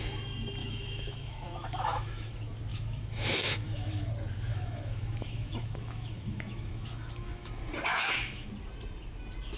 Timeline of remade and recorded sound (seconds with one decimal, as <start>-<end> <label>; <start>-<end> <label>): 0.0-0.6 recorded; 0.6-2.3 remade; 2.3-2.7 recorded; 2.7-4.1 remade; 4.1-4.5 recorded; 4.5-7.5 remade; 7.5-7.9 recorded; 7.9-8.5 remade; 8.5-9.6 recorded